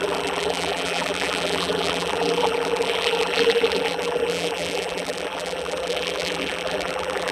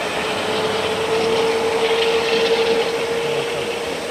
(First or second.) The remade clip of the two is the first